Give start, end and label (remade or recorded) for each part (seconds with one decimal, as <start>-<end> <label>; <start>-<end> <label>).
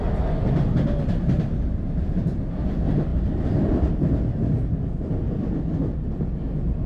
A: 0.0-6.9 recorded